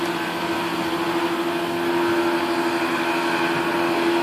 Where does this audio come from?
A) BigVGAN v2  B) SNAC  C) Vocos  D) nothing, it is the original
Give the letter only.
D